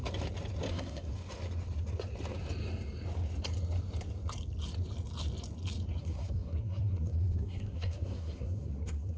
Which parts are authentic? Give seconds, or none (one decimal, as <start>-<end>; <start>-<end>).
0.0-0.7; 1.1-6.0